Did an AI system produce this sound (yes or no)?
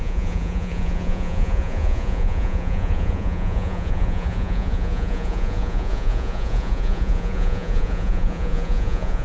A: yes